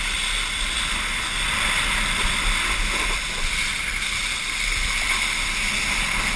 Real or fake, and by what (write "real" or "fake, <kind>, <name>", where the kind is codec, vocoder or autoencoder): real